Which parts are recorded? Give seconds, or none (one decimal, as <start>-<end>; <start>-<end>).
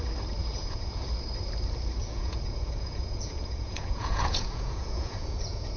0.0-0.4; 1.0-2.0